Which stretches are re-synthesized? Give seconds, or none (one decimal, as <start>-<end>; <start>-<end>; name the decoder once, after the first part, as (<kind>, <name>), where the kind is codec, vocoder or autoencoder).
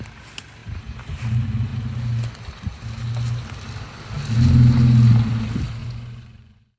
5.8-6.8 (vocoder, Vocos)